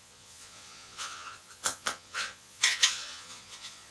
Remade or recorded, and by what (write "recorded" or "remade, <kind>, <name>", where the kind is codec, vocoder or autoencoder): remade, vocoder, Vocos